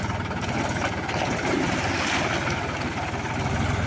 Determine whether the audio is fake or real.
real